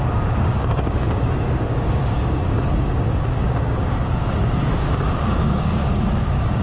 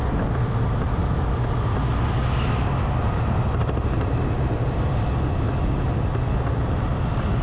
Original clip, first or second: second